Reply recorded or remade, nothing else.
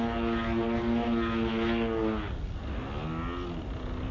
recorded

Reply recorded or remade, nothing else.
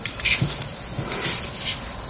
recorded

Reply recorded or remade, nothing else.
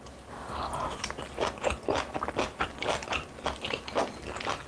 recorded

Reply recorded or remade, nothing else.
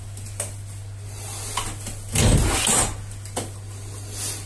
recorded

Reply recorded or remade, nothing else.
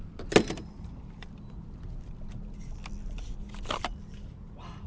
recorded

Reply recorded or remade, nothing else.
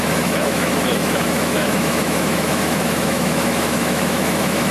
remade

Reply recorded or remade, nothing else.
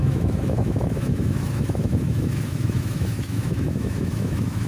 remade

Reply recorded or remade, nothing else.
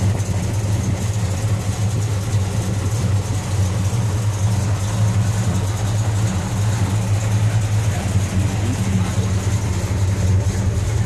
recorded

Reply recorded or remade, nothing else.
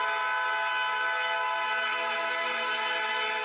recorded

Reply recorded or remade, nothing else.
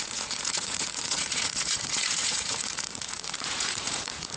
remade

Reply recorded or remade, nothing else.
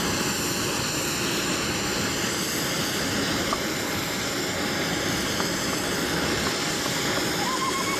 recorded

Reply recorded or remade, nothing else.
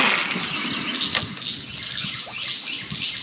recorded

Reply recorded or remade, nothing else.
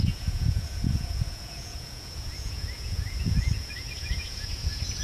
remade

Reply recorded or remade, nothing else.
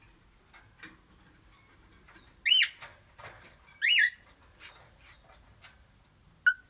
recorded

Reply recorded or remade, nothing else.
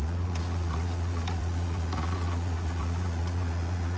remade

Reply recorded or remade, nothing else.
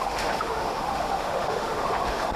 remade